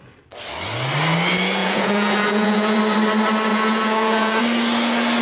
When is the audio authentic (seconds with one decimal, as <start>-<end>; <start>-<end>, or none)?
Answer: 0.0-1.6; 2.8-3.5; 4.4-5.2